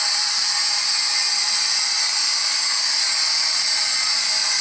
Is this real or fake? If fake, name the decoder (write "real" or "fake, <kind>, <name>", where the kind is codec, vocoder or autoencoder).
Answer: real